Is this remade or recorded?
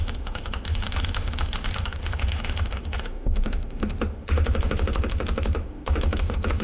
remade